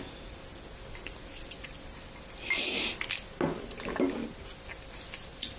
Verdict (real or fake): real